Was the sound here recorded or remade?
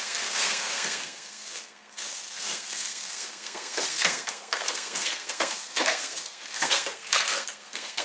remade